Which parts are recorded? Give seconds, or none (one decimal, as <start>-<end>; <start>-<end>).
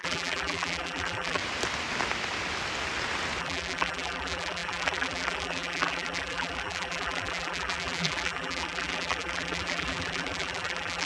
1.4-3.4